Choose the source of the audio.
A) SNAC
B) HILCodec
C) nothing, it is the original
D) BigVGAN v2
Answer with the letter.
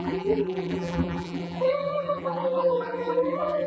D